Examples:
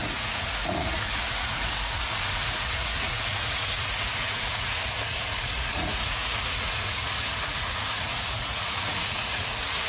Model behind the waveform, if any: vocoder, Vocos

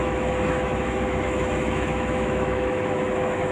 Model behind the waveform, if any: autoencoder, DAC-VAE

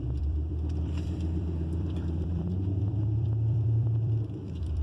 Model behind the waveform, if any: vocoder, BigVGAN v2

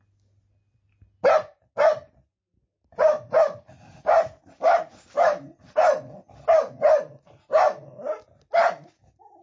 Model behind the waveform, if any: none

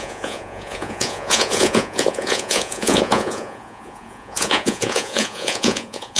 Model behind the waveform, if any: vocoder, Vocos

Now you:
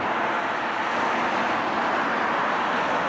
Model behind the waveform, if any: none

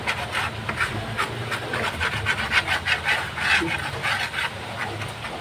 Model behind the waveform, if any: none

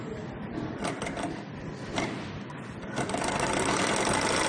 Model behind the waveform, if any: none